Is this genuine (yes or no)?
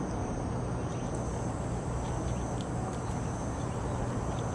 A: yes